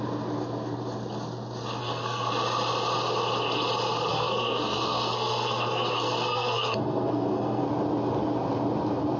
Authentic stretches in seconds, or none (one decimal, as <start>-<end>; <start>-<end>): 0.0-1.8; 2.3-4.1; 7.6-9.2